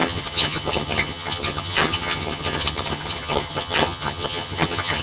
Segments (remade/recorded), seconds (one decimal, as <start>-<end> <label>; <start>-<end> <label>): 0.0-5.0 remade